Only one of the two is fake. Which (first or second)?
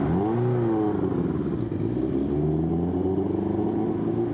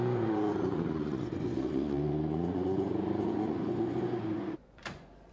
second